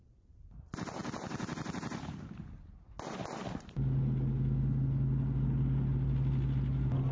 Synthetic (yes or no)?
no